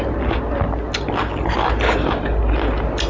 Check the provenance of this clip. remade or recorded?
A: recorded